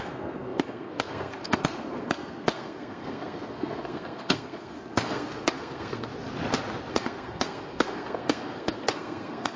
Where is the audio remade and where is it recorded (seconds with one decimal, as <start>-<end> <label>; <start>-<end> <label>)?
0.0-6.1 remade; 6.1-6.9 recorded; 6.9-9.6 remade